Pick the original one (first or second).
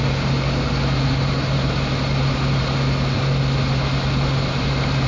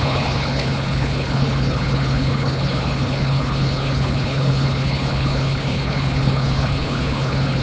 first